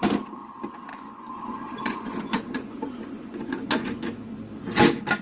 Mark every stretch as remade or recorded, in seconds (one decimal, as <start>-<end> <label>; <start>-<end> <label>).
0.0-0.9 recorded; 0.9-4.0 remade; 4.0-5.2 recorded